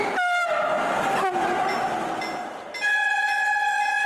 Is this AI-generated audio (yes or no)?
no